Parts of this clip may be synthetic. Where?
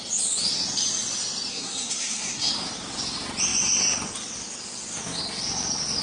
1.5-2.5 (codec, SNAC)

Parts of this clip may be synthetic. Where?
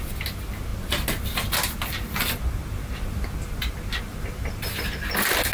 none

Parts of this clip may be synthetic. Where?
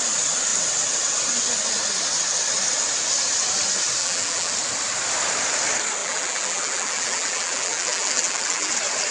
4.0-4.5 (vocoder, BigVGAN v2); 6.0-8.7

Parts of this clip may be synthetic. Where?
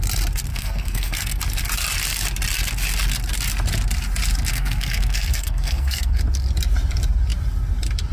0.5-1.4 (codec, SNAC); 4.5-6.2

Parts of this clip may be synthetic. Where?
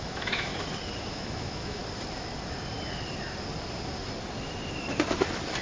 0.0-0.5 (autoencoder, DAC-VAE); 1.1-1.8